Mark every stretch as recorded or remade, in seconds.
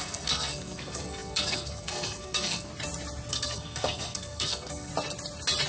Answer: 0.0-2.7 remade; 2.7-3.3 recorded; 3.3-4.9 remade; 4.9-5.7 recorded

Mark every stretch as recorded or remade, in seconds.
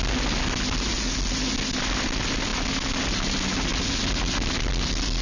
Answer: 0.0-5.2 recorded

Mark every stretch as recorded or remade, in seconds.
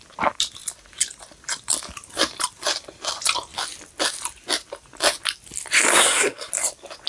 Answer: 0.0-5.9 recorded; 5.9-6.5 remade; 6.5-7.1 recorded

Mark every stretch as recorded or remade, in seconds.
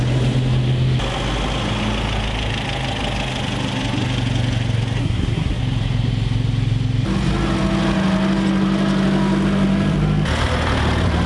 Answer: 0.0-5.0 recorded; 5.0-5.6 remade; 5.6-11.3 recorded